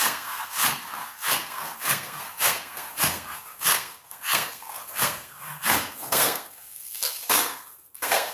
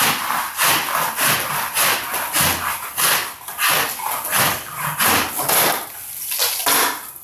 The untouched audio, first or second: second